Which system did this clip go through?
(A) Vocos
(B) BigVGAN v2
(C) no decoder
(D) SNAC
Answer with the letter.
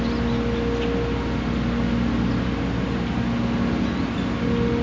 C